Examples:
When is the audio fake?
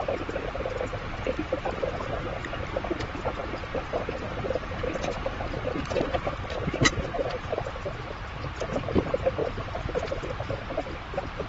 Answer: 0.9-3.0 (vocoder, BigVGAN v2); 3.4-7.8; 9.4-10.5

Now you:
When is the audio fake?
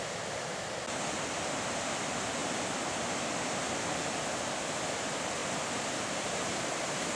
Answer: none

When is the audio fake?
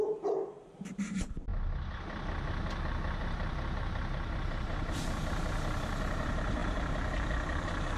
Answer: 0.0-1.5 (vocoder, BigVGAN v2); 3.2-8.0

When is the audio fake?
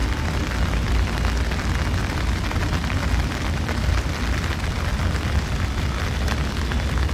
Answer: 0.0-0.9 (vocoder, BigVGAN v2); 2.0-6.3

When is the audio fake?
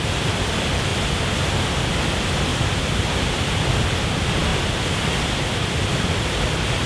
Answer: 2.5-3.3 (vocoder, BigVGAN v2)